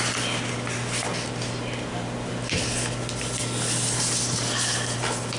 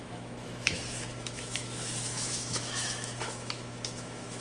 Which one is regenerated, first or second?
second